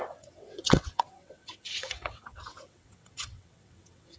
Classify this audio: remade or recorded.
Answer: remade